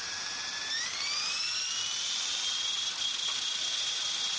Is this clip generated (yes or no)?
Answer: no